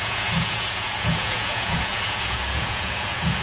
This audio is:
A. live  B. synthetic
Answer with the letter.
B